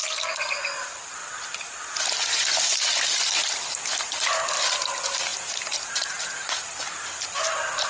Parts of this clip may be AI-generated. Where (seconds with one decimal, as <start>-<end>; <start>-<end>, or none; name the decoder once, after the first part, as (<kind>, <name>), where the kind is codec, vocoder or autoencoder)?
none